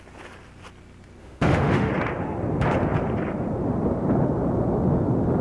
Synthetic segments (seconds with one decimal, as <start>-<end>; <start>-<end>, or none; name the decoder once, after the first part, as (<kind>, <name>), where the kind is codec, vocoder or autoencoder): 1.2-1.9 (autoencoder, DAC-VAE)

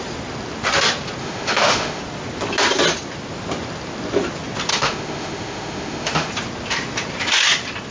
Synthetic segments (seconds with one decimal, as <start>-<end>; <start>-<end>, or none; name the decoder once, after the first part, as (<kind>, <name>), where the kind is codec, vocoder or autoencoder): 1.2-2.0 (autoencoder, DAC-VAE); 4.7-6.3

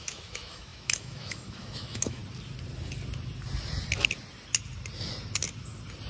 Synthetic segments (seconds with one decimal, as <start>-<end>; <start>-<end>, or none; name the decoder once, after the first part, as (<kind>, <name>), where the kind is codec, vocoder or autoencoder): 0.0-2.2 (autoencoder, DAC-VAE)

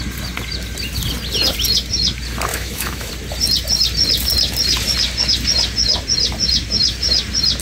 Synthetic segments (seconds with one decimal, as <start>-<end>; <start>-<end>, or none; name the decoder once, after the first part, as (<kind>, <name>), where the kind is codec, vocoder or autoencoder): 2.5-3.1 (autoencoder, DAC-VAE)

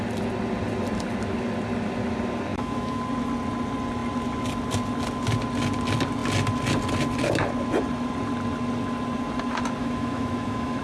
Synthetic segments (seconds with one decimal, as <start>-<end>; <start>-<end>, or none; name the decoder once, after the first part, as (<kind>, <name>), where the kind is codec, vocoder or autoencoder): 2.5-3.0 (autoencoder, DAC-VAE); 9.8-10.8

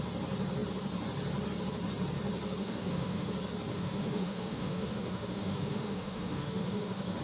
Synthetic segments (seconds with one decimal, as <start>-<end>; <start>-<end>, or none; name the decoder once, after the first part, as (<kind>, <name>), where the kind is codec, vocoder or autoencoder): 2.6-3.3 (autoencoder, DAC-VAE); 3.7-7.2

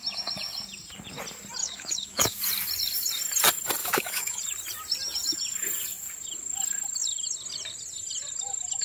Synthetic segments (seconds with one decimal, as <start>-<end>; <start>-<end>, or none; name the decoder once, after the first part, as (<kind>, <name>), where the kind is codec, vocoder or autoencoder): 1.6-2.4 (autoencoder, DAC-VAE); 3.8-4.4